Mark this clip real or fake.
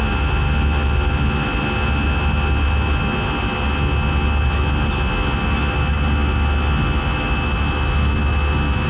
real